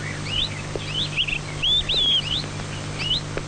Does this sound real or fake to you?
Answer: real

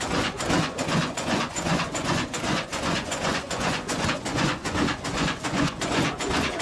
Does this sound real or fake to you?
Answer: fake